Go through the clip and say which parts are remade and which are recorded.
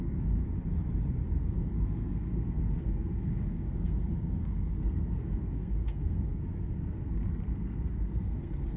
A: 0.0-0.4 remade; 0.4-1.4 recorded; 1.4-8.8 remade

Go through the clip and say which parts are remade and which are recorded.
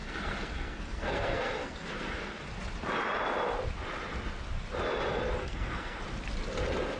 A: 0.0-2.5 remade; 2.5-5.4 recorded; 5.4-6.0 remade; 6.0-7.0 recorded